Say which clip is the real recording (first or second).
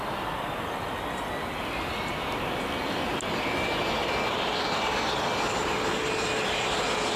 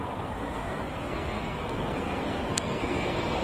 first